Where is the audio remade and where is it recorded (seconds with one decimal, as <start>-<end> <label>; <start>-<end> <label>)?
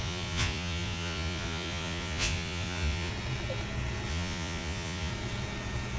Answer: 0.0-3.1 remade; 3.1-4.1 recorded; 4.1-5.1 remade; 5.1-6.0 recorded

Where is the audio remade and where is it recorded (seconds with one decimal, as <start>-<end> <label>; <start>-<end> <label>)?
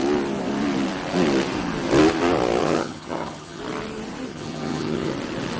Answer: 0.0-2.6 recorded; 2.6-3.6 remade; 3.6-4.3 recorded; 4.3-5.1 remade; 5.1-5.6 recorded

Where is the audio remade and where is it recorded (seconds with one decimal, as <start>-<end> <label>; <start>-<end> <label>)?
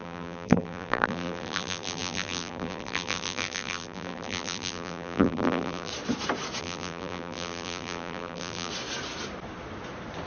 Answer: 0.0-5.9 remade; 5.9-6.6 recorded; 6.6-8.7 remade; 8.7-10.3 recorded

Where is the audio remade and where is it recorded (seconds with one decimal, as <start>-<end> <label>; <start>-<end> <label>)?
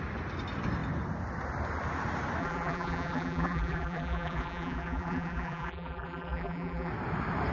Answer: 0.0-2.4 recorded; 2.4-6.9 remade; 6.9-7.5 recorded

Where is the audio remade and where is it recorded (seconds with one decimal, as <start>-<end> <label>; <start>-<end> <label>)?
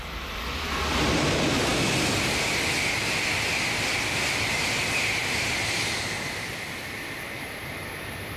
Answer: 0.0-8.4 recorded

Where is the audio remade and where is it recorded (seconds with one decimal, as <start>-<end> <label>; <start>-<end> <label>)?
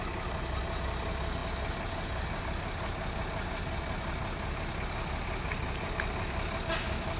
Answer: 0.0-7.2 recorded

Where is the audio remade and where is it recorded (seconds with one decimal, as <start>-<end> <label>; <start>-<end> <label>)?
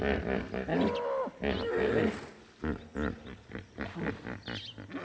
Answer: 0.0-5.0 recorded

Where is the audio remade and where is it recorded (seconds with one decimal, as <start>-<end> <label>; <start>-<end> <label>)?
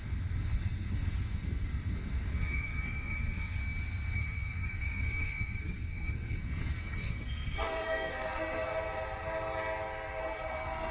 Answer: 0.0-3.6 remade; 3.6-4.1 recorded; 4.1-8.7 remade; 8.7-10.2 recorded; 10.2-10.9 remade